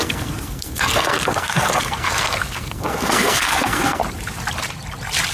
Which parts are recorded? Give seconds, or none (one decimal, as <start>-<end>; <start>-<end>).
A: 4.0-5.3